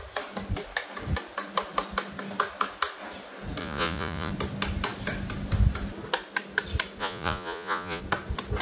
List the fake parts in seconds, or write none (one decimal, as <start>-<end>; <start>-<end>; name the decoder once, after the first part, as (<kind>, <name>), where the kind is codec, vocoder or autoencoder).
3.6-4.3 (vocoder, Vocos); 7.0-8.0